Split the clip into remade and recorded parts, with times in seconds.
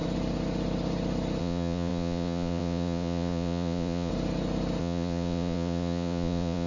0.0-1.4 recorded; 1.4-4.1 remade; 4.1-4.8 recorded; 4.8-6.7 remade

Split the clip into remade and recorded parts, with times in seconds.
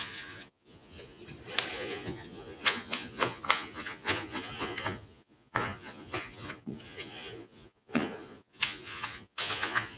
0.0-1.2 remade; 1.2-1.7 recorded; 1.7-10.0 remade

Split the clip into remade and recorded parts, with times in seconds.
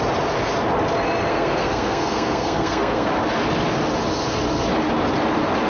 0.0-1.3 recorded; 1.3-3.1 remade; 3.1-5.7 recorded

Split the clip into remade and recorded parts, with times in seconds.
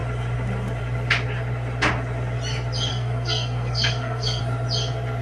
0.0-2.9 recorded; 2.9-4.4 remade; 4.4-5.2 recorded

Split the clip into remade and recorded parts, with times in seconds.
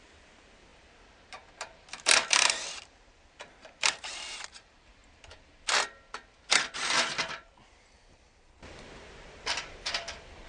0.0-5.0 remade; 5.0-8.1 recorded; 8.1-10.5 remade